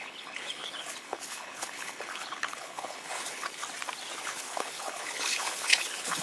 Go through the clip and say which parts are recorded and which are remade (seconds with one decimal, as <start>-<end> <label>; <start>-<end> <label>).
0.0-3.6 remade; 3.6-4.2 recorded; 4.2-6.2 remade

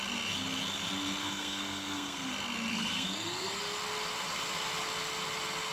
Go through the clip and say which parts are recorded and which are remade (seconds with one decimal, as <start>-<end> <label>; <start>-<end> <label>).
0.0-1.2 recorded; 1.2-2.3 remade; 2.3-2.7 recorded; 2.7-3.6 remade; 3.6-5.7 recorded

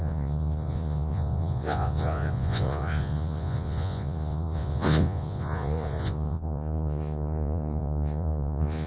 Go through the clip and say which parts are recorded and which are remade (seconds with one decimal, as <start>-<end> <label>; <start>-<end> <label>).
0.0-8.9 remade

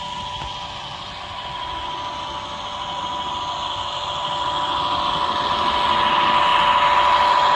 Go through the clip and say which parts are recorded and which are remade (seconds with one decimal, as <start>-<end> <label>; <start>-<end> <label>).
0.0-7.6 recorded